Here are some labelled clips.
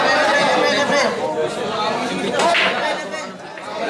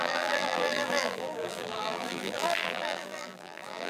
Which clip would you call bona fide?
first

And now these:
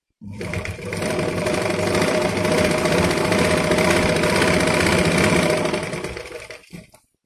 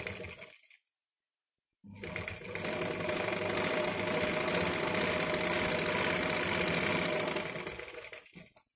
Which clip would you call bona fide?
second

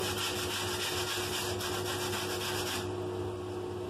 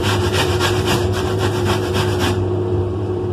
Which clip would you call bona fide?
first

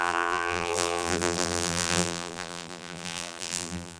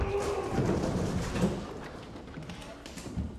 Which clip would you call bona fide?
second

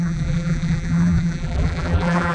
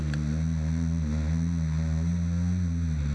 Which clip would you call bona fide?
second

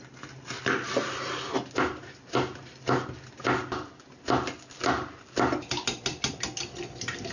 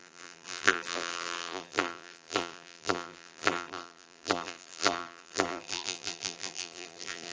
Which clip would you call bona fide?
first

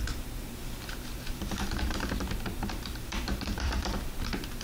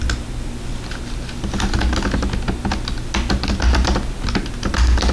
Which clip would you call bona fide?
second